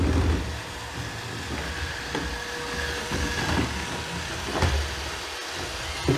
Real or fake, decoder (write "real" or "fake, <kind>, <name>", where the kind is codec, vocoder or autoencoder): real